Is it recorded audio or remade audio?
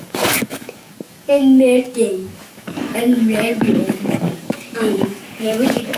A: remade